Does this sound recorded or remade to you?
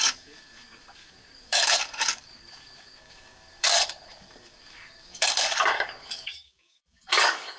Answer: remade